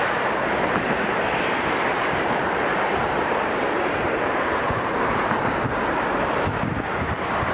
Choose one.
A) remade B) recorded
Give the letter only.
A